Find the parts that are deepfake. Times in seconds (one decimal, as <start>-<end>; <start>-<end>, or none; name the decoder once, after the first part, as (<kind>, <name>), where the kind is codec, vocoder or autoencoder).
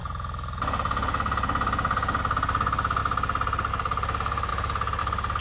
none